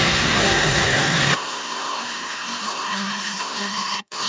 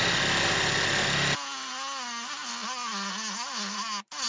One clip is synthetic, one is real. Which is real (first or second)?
second